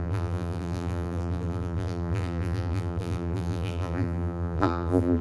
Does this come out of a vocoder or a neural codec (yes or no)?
yes